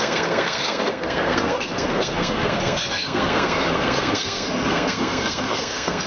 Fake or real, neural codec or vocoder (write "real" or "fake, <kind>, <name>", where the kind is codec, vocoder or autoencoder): fake, codec, SNAC